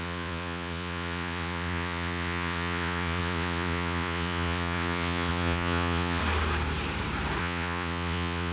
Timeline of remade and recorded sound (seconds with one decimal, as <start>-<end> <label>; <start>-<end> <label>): 0.0-6.2 remade; 6.2-7.4 recorded; 7.4-8.5 remade